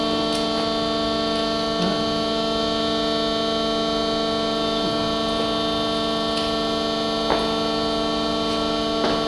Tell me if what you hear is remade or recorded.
recorded